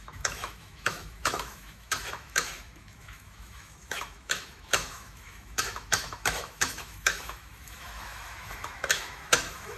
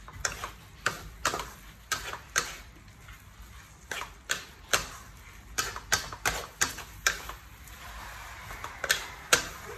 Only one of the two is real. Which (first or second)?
second